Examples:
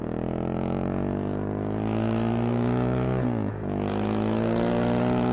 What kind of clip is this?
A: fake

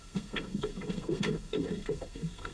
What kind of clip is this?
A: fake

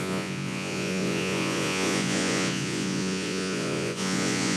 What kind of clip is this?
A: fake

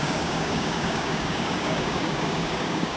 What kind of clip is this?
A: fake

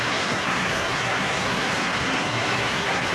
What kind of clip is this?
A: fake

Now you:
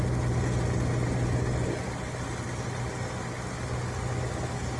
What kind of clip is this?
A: real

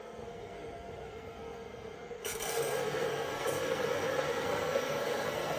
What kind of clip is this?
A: fake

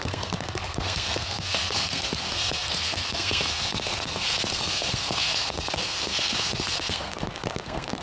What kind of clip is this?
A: fake